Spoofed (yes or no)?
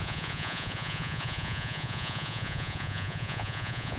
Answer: yes